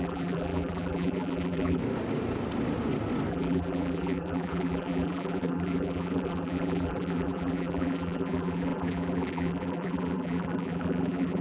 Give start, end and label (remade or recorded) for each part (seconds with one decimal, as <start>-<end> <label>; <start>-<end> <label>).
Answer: 0.0-1.8 remade; 1.8-3.3 recorded; 3.3-11.4 remade